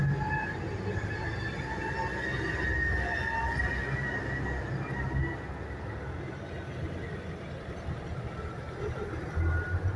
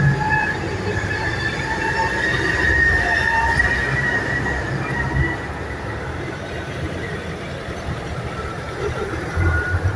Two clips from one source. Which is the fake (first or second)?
second